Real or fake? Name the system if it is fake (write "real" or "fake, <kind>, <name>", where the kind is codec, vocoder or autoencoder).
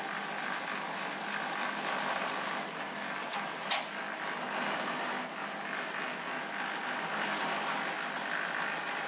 real